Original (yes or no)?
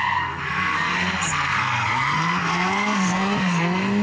no